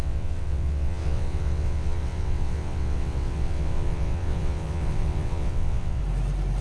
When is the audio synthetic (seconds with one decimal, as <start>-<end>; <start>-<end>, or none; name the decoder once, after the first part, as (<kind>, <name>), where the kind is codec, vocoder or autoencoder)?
0.0-6.0 (vocoder, WaveNeXt)